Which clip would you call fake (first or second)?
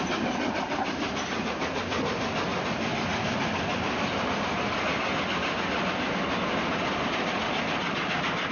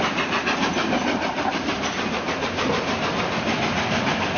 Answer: second